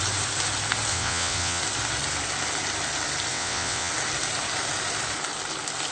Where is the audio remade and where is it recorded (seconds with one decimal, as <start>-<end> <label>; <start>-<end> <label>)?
0.0-0.9 recorded; 0.9-1.6 remade; 1.6-3.3 recorded; 3.3-3.9 remade; 3.9-5.9 recorded